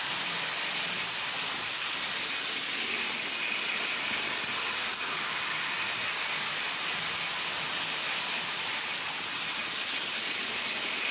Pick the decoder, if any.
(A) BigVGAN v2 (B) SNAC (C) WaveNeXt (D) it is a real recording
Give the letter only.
D